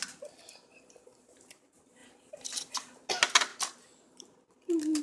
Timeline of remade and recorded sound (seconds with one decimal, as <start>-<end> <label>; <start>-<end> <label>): 0.0-2.0 recorded; 2.0-3.1 remade; 3.1-5.0 recorded